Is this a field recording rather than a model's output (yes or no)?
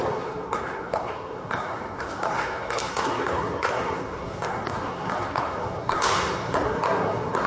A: no